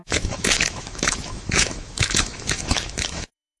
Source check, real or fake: fake